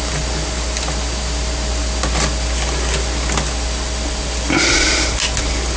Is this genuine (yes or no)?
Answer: yes